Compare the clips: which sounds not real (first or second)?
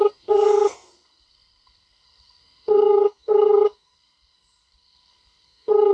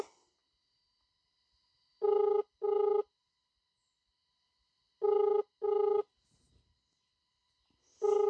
first